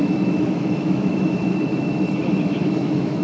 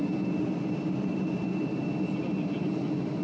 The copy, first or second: first